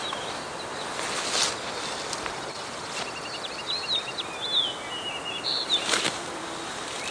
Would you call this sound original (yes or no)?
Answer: yes